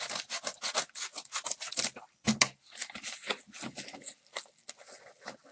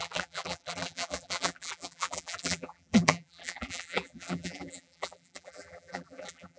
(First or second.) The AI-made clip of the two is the second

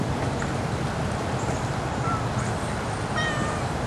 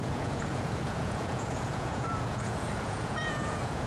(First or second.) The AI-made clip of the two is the second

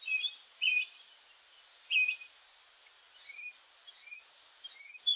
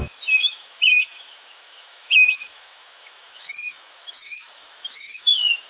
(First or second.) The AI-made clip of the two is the second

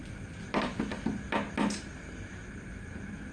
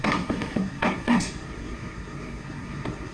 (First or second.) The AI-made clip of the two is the second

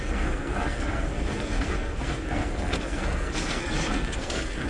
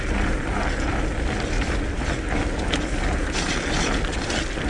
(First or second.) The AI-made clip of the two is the first